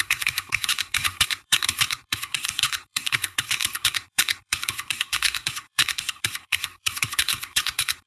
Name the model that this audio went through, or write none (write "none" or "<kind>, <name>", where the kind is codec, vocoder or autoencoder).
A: codec, SNAC